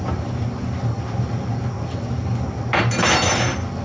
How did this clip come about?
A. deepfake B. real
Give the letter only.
B